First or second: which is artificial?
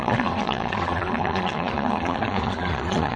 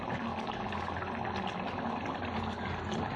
first